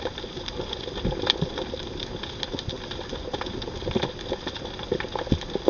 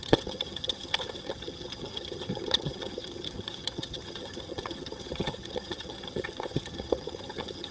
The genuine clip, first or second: first